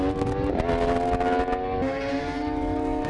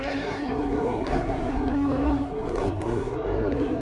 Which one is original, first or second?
first